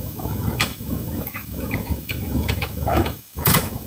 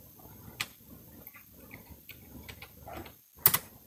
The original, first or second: second